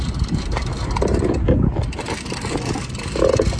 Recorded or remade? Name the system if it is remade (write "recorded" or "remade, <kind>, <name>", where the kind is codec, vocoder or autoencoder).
recorded